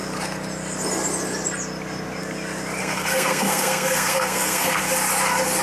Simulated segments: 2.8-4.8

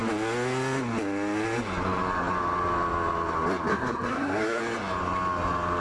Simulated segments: 3.7-4.6

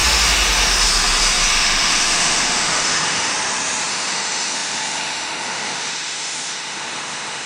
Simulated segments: 1.5-3.3; 3.9-7.5